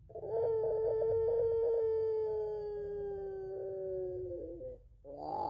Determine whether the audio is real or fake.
real